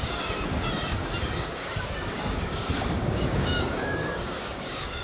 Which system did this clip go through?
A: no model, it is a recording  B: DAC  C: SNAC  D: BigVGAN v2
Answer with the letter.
B